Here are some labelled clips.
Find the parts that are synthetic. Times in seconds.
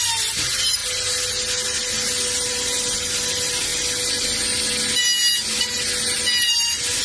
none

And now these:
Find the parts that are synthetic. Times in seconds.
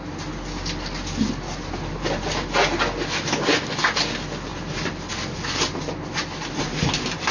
none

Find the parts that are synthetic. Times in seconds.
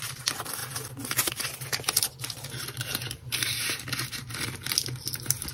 none